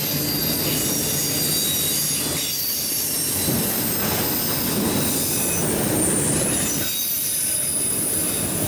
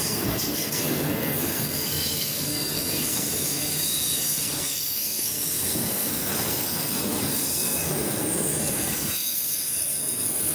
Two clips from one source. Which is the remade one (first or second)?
second